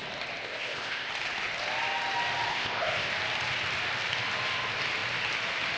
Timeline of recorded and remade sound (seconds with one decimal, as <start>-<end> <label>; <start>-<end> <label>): 0.0-0.4 recorded; 0.4-1.1 remade; 1.1-2.5 recorded; 2.5-3.1 remade; 3.1-5.8 recorded